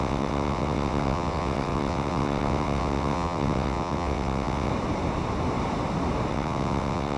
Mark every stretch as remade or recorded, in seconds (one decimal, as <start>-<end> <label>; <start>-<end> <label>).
0.0-4.7 remade; 4.7-6.3 recorded; 6.3-7.2 remade

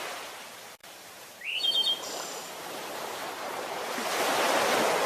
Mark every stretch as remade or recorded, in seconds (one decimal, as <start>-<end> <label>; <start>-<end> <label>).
0.0-0.8 recorded; 0.8-3.9 remade; 3.9-5.1 recorded